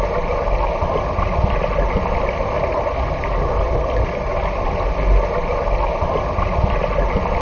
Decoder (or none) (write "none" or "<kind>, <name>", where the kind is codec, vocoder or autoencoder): none